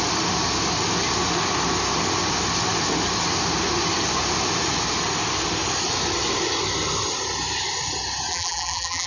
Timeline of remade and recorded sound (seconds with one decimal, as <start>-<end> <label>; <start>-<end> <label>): 0.0-8.3 recorded; 8.3-9.1 remade